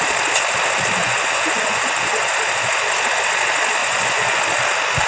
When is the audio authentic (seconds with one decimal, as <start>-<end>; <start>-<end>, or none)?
0.0-1.0; 2.3-3.8; 4.4-5.1